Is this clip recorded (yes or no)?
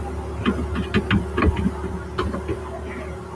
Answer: yes